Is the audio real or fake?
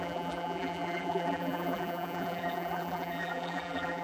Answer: fake